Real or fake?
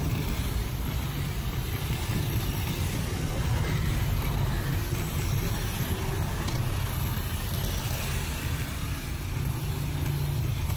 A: real